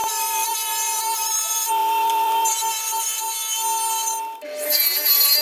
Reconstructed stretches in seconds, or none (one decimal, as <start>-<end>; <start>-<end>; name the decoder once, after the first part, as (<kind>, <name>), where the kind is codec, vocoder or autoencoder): 0.0-3.4 (vocoder, BigVGAN v2)